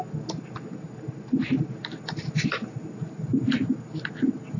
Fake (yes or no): no